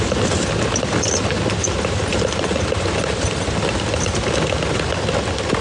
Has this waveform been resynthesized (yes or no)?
no